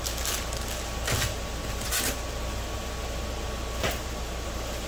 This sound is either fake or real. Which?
real